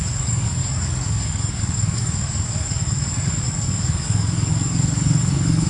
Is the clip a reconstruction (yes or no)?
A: yes